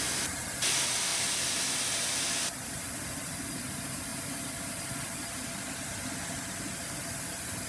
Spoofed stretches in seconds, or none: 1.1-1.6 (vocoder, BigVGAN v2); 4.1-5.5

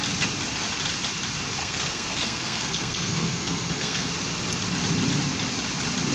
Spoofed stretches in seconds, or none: 1.6-4.1 (codec, SNAC)

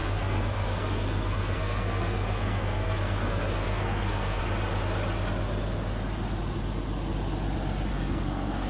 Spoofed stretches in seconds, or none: 0.0-4.4 (codec, SNAC); 7.9-8.7

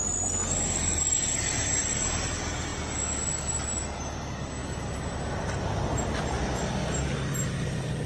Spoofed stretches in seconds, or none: none

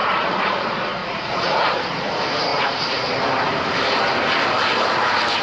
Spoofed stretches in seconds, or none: 0.0-0.6 (vocoder, Vocos); 1.0-1.8; 2.5-3.1

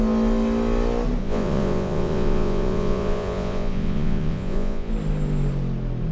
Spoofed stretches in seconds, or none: 1.2-4.9 (vocoder, Vocos)